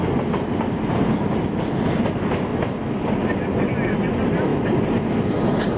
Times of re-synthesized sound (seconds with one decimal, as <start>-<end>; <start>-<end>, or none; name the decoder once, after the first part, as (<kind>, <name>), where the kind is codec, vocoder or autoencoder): none